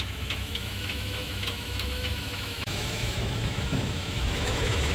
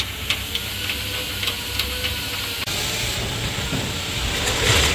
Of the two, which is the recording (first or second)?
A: second